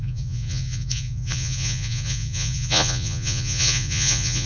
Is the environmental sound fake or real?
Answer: fake